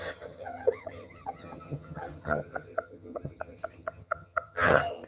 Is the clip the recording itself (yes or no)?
no